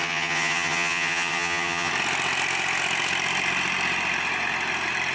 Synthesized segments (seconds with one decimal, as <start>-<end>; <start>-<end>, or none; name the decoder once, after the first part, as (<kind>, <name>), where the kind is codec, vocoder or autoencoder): 0.0-1.9 (vocoder, HiFi-GAN)